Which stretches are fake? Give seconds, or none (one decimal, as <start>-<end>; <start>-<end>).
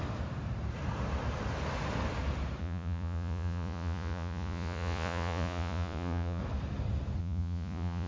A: 2.6-6.4; 7.2-8.1